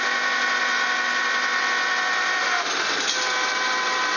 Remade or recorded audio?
recorded